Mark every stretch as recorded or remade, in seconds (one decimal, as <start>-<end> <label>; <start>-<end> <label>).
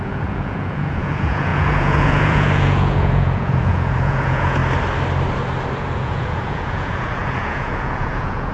0.0-4.6 remade; 4.6-5.8 recorded; 5.8-8.5 remade